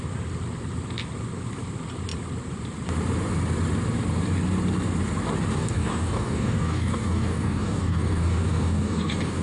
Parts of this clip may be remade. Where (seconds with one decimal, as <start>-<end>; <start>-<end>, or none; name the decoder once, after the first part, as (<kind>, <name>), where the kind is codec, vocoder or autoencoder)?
5.5-9.4 (codec, DAC)